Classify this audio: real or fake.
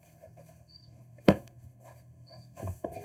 fake